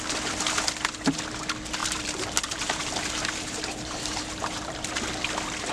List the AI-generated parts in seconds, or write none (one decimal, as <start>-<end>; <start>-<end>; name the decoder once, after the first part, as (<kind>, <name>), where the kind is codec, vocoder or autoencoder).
1.8-4.9 (vocoder, BigVGAN v2)